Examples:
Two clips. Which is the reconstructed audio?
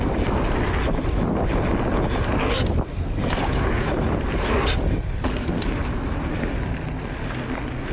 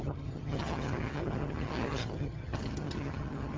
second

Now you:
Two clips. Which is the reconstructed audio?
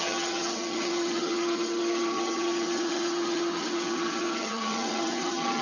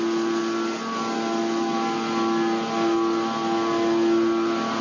first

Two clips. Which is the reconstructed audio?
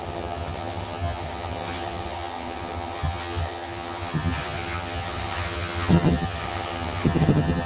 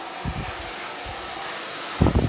first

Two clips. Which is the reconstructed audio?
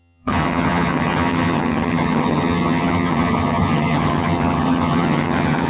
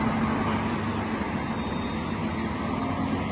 first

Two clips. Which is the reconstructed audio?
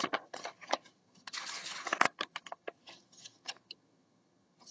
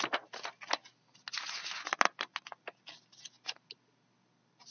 first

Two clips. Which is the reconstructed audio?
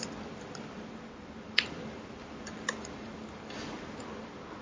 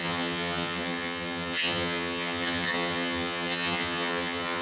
second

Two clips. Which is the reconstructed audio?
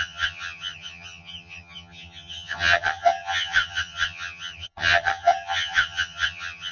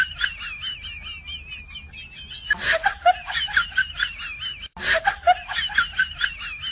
first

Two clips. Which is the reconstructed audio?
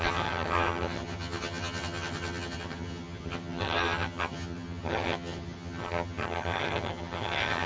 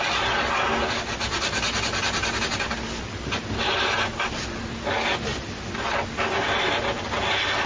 first